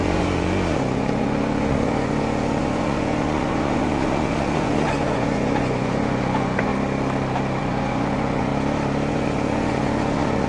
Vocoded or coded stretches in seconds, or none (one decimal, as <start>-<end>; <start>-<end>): 0.0-6.7; 7.6-8.5; 9.1-10.5